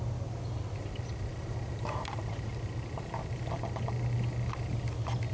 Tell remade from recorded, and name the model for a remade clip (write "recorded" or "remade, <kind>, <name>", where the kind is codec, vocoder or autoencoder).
recorded